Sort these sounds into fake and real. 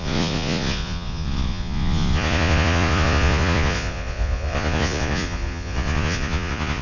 fake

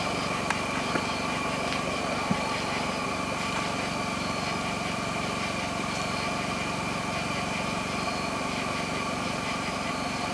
real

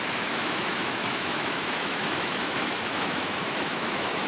fake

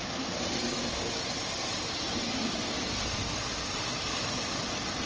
real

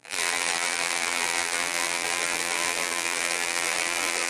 fake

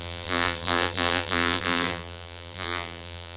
fake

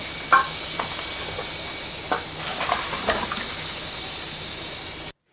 real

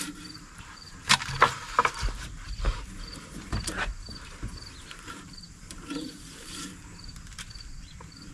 fake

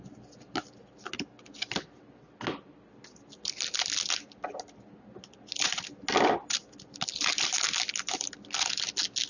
real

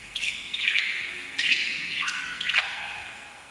fake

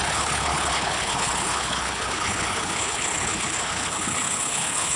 fake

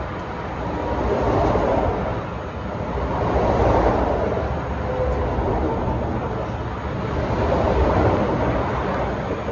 real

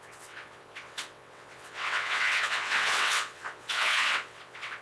fake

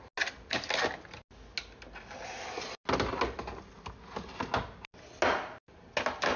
real